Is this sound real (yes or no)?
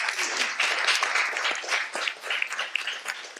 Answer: yes